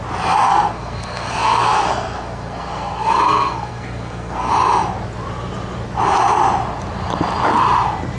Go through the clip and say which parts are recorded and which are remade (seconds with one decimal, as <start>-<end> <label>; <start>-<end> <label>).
0.0-0.4 recorded; 0.4-4.5 remade; 4.5-8.2 recorded